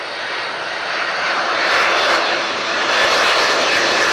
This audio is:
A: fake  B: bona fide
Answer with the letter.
A